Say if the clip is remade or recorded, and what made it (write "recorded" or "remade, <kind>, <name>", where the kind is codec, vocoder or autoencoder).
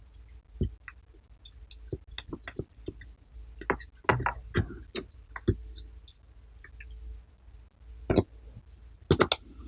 recorded